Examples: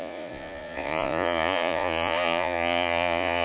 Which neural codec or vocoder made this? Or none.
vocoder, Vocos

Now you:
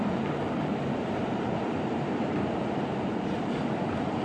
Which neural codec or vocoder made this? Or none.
vocoder, BigVGAN v2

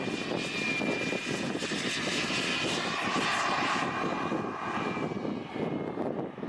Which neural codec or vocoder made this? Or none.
none